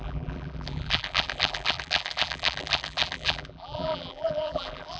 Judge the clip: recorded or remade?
remade